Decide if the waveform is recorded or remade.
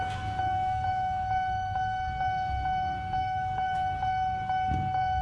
remade